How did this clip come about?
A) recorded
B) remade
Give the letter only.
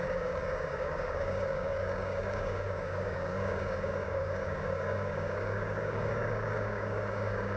B